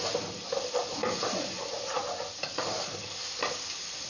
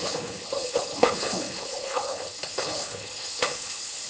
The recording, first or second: first